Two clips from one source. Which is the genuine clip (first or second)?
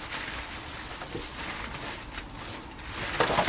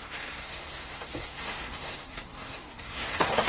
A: first